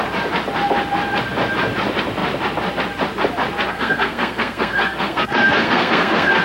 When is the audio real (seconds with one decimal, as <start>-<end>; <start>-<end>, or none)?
0.0-3.7